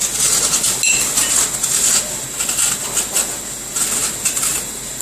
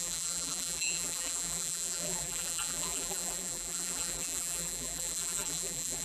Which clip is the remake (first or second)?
second